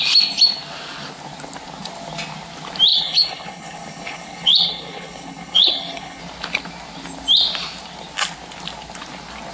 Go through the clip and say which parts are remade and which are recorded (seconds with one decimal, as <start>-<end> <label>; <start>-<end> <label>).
0.0-2.9 recorded; 2.9-6.2 remade; 6.2-9.5 recorded